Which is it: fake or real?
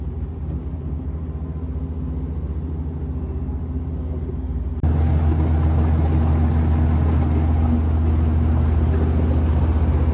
real